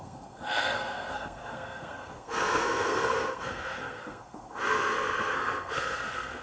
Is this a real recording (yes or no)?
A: no